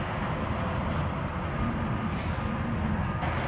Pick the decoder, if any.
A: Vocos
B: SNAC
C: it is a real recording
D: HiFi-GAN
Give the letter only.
C